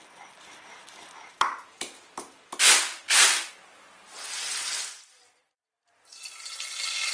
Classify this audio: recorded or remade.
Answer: recorded